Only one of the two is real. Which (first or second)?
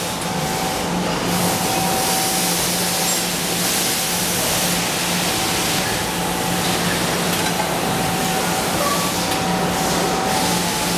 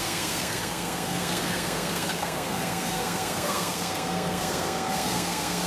first